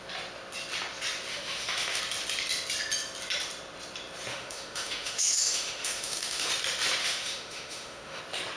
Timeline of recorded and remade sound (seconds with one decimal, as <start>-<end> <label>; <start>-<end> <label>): 0.0-1.3 recorded; 1.3-2.0 remade; 2.0-4.3 recorded; 4.3-6.5 remade; 6.5-7.0 recorded; 7.0-8.2 remade; 8.2-8.6 recorded